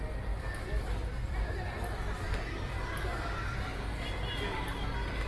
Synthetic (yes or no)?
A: no